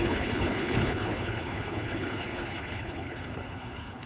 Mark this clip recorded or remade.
remade